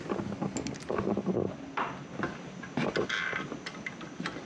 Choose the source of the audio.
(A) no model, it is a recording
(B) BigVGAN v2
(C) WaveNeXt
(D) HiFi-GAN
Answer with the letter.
A